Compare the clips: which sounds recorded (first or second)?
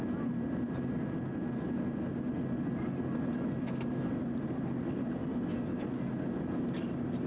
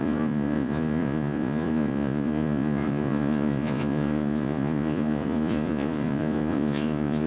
first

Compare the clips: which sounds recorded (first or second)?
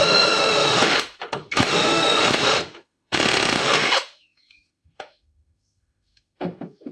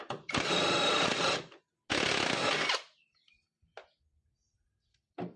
second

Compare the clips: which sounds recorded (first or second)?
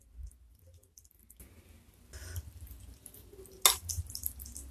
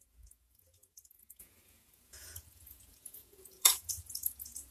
first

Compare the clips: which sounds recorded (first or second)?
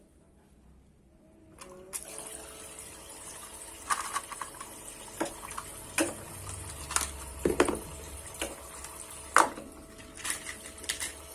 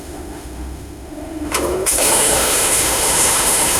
first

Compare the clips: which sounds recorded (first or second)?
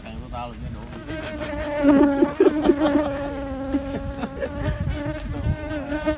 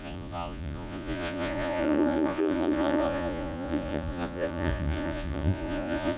first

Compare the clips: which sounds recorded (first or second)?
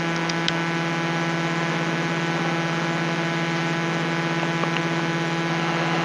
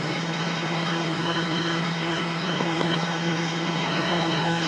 first